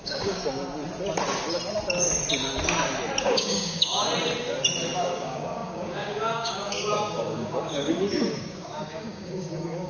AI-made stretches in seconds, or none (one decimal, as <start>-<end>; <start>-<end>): 0.0-0.4; 3.2-4.1; 5.0-9.9